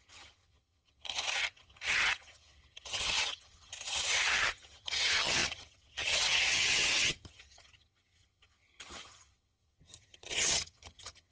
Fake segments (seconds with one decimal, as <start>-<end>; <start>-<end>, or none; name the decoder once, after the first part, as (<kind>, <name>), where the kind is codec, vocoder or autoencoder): 0.0-11.3 (vocoder, HiFi-GAN)